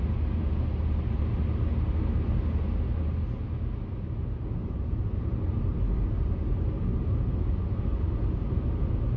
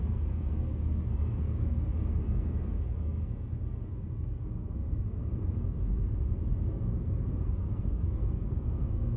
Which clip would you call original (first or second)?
first